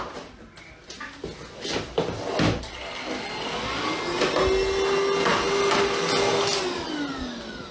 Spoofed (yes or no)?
no